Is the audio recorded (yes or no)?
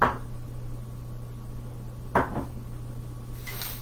yes